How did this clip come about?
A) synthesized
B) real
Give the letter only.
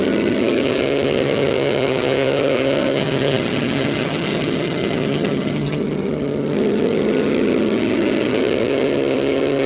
A